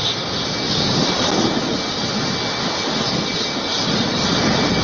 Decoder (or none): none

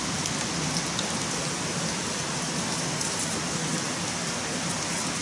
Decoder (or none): none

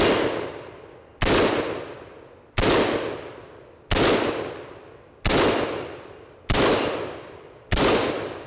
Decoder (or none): none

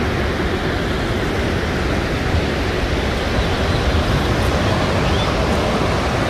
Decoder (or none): none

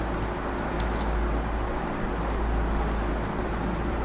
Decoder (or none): none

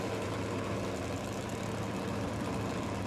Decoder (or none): none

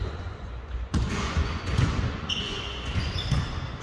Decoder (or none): vocoder, Vocos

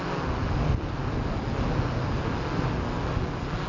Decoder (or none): none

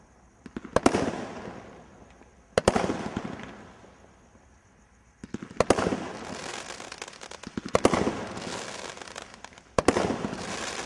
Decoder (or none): none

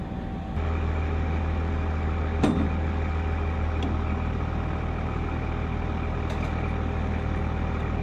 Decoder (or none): none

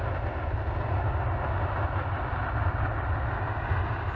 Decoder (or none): none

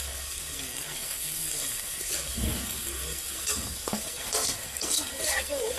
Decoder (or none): codec, SNAC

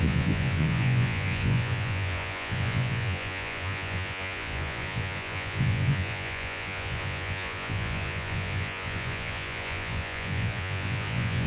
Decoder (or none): vocoder, Vocos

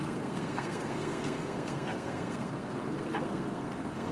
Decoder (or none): codec, SNAC